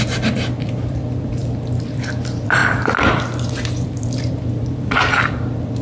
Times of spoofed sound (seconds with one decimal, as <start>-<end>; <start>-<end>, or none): 0.0-5.8